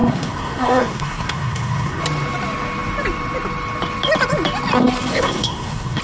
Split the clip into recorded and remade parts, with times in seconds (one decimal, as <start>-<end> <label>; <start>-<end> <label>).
0.0-2.0 remade; 2.0-5.1 recorded; 5.1-6.0 remade